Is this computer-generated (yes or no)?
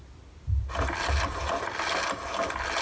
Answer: yes